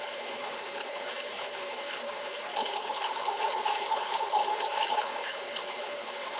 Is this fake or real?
fake